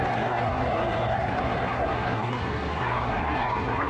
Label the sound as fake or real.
fake